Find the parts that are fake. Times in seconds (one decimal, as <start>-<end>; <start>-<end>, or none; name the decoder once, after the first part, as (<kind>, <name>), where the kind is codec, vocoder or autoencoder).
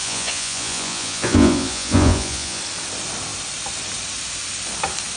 0.0-2.6 (vocoder, Vocos)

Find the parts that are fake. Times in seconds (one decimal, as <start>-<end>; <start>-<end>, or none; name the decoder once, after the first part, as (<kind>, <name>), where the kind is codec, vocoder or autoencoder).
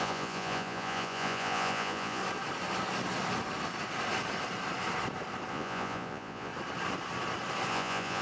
0.0-2.2 (vocoder, Vocos); 5.5-6.5; 7.7-8.2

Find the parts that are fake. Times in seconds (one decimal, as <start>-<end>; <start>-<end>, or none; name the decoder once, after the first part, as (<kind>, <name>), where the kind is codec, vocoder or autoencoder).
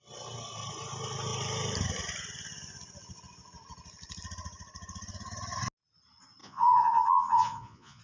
6.4-8.0 (vocoder, Vocos)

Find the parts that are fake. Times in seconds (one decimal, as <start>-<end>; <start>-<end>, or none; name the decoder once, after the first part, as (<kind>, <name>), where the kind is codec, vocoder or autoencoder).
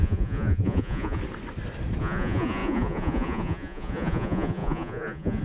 0.0-1.2 (vocoder, Vocos); 2.0-5.4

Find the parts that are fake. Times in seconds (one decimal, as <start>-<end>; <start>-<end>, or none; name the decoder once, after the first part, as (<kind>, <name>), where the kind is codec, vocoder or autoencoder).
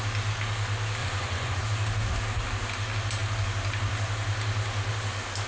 1.0-1.6 (vocoder, Vocos)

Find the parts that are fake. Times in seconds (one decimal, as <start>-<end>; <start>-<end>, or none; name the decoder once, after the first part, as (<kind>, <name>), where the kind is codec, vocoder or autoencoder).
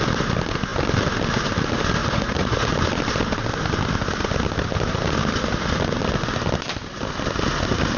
2.0-2.7 (vocoder, Vocos)